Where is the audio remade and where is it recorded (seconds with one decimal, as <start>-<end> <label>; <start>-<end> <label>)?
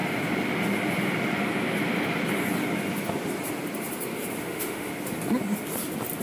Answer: 0.0-4.4 recorded; 4.4-4.9 remade; 4.9-6.2 recorded